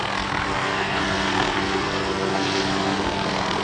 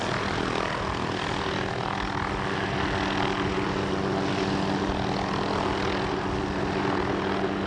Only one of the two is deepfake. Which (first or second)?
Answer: first